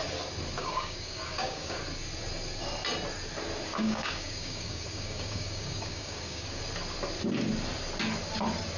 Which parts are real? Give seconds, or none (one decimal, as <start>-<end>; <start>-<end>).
0.0-0.6; 1.8-3.7; 6.6-8.8